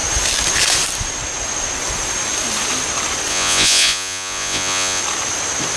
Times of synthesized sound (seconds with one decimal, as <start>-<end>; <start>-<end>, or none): 3.3-5.0